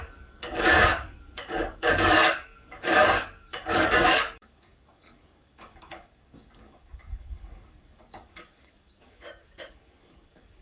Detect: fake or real fake